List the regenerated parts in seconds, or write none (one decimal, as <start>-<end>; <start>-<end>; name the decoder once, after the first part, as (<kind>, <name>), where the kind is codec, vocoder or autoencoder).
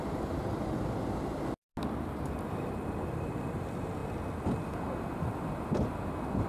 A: none